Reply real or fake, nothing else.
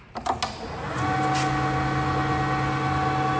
real